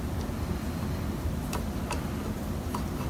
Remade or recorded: recorded